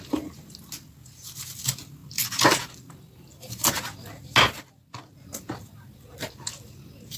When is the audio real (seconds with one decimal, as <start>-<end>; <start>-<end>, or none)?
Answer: 0.0-7.2